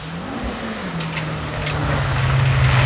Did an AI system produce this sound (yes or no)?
no